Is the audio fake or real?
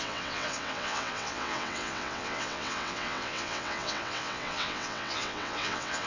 fake